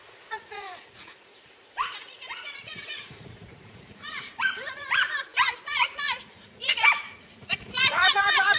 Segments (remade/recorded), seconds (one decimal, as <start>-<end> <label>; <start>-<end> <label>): 0.0-8.6 remade